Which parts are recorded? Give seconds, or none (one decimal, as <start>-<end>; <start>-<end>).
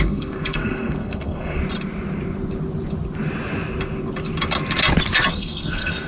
1.6-5.3